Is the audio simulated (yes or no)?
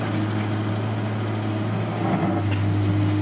no